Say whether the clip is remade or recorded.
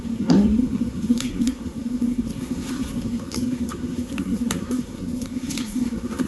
remade